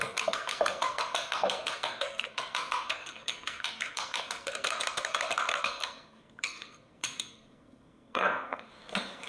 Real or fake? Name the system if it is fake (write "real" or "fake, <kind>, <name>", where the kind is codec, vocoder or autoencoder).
fake, codec, SNAC